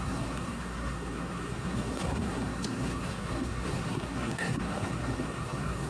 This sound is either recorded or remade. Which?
remade